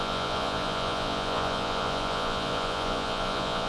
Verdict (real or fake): fake